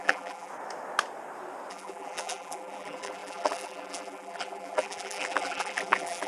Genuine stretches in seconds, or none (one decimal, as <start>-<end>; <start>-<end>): 0.5-1.7